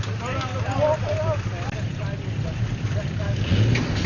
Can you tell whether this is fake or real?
real